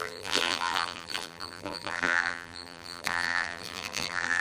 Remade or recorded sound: remade